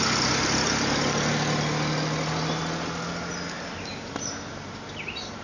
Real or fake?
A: real